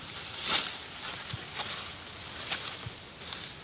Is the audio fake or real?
real